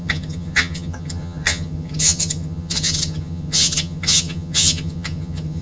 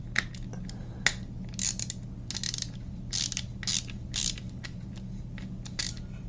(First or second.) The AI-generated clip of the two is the first